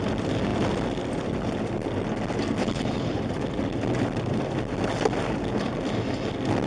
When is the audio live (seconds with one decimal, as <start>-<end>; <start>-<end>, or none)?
0.0-2.6; 3.2-6.7